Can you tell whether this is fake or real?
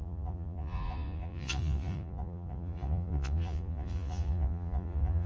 fake